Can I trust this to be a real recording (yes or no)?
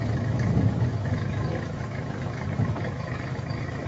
no